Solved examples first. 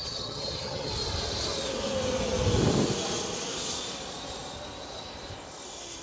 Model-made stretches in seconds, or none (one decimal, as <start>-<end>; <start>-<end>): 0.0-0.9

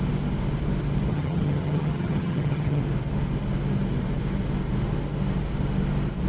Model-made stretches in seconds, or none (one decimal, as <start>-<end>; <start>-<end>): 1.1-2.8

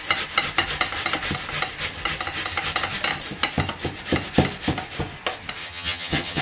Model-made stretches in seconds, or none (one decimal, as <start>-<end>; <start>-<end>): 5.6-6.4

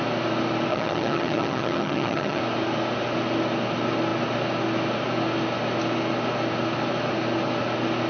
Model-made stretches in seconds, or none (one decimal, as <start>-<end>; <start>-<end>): 0.7-2.4

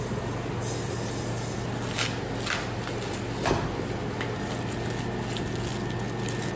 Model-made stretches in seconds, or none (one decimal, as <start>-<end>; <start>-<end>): none

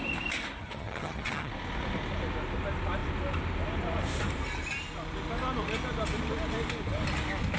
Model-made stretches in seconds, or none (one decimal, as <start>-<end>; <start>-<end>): 0.6-1.5

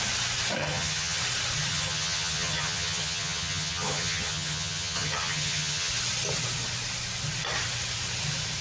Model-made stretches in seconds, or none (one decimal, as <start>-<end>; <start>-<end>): 0.6-1.2; 1.7-5.9